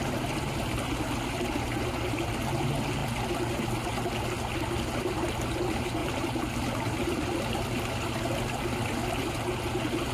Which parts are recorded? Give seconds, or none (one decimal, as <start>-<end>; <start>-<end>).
0.0-6.0; 9.3-10.1